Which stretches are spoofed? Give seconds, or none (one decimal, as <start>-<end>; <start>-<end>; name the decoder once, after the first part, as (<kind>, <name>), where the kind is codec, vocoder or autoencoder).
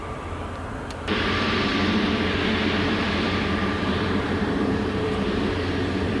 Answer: 0.0-1.7 (vocoder, BigVGAN v2); 3.0-6.2